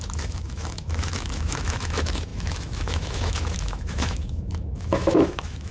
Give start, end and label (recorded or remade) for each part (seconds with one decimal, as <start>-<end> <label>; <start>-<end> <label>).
0.0-5.7 remade